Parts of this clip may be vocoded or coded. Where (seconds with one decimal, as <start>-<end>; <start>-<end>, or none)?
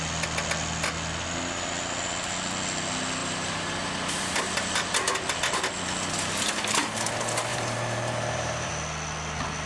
3.2-4.9; 7.5-8.7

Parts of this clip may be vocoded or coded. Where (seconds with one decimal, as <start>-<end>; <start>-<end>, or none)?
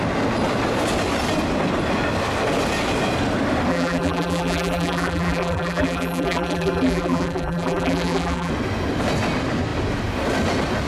3.7-8.5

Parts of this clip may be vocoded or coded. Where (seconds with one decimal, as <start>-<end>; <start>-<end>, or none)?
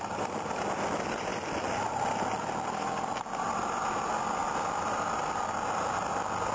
none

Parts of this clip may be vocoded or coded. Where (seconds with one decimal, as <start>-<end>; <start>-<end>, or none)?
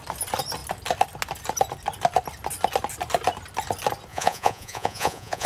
4.1-5.5